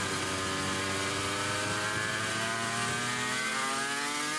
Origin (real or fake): real